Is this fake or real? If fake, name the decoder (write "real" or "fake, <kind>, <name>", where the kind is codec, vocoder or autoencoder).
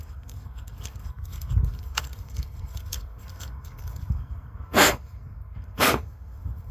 fake, codec, SNAC